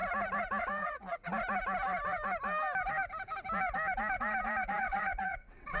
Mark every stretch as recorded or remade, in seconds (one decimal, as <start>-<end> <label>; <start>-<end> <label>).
0.0-0.6 recorded; 0.6-1.3 remade; 1.3-4.8 recorded; 4.8-5.8 remade